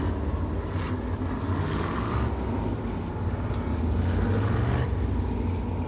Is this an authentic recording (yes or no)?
yes